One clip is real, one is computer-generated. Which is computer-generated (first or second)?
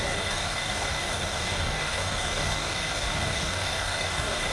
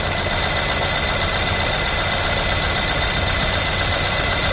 first